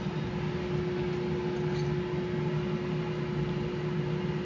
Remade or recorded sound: recorded